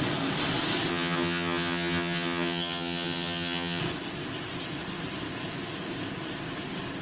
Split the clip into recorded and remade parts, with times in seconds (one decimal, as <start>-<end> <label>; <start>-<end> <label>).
0.0-0.9 recorded; 0.9-3.8 remade; 3.8-7.0 recorded